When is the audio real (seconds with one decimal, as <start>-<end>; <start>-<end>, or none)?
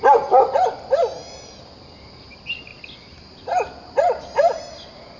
0.0-5.2